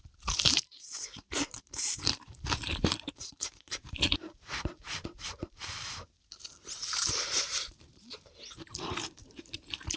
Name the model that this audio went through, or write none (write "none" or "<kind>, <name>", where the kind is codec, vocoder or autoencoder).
vocoder, BigVGAN v2